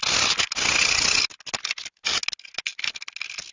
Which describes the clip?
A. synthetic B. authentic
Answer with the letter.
B